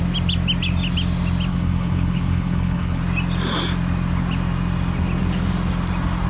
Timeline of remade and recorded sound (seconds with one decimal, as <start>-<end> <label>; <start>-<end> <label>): 0.0-1.5 recorded; 1.5-3.0 remade; 3.0-6.3 recorded